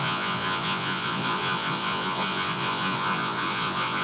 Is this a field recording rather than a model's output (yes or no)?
no